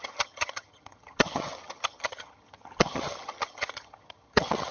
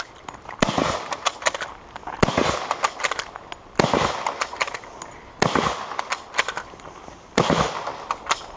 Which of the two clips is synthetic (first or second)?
first